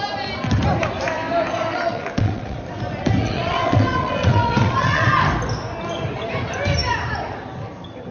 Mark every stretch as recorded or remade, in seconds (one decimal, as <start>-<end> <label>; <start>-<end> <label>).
0.0-1.7 recorded; 1.7-2.6 remade; 2.6-3.2 recorded; 3.2-5.1 remade; 5.1-8.1 recorded